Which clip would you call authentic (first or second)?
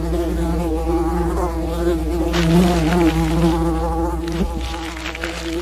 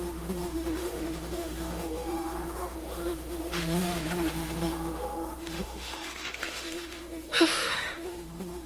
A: first